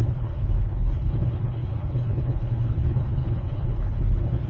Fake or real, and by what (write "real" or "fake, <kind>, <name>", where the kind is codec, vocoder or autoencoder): fake, codec, HILCodec